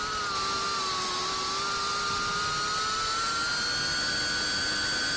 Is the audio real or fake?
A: real